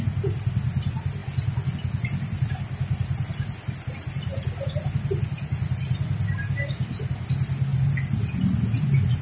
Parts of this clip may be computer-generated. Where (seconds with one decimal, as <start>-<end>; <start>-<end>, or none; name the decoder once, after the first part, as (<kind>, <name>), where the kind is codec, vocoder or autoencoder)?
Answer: none